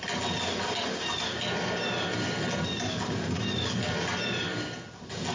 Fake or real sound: real